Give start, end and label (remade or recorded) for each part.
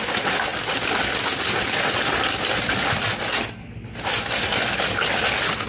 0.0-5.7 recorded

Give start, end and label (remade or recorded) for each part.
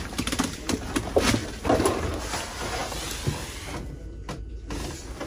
0.0-5.3 recorded